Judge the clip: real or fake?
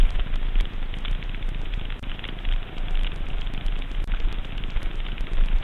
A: real